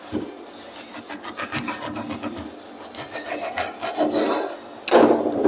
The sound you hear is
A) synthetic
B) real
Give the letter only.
B